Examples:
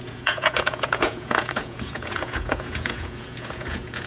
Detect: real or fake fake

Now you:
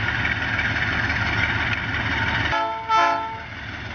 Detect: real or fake real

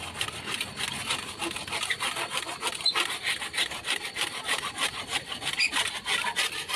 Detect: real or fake real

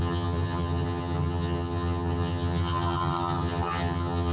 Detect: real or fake fake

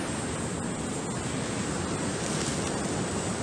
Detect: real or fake real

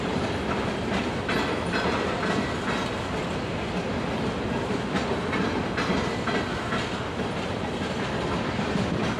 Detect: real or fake real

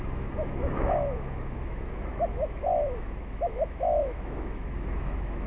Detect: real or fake fake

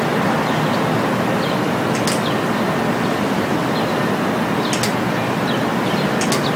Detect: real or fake real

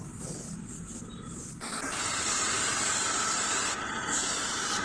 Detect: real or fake real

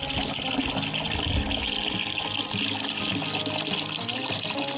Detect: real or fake real